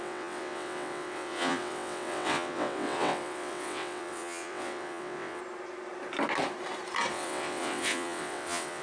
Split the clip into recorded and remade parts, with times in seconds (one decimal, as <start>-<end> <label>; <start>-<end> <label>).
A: 0.0-5.4 remade; 5.4-7.1 recorded; 7.1-8.8 remade